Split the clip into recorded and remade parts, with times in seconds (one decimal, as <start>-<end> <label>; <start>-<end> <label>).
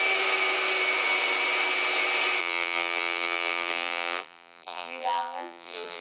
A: 0.0-2.4 recorded; 2.4-6.0 remade